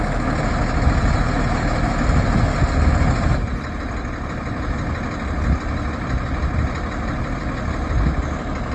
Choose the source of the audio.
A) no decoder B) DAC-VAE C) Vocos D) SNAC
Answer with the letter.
A